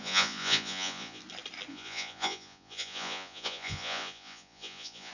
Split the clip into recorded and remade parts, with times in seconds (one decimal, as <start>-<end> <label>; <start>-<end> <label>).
0.0-1.2 remade; 1.2-1.7 recorded; 1.7-5.1 remade